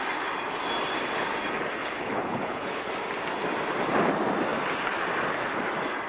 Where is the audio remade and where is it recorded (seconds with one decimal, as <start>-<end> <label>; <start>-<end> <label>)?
0.0-1.8 recorded; 1.8-2.9 remade; 2.9-6.1 recorded